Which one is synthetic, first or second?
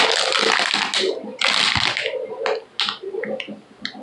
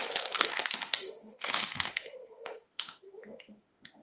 second